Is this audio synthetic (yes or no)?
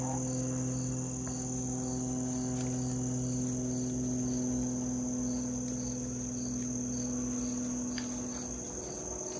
no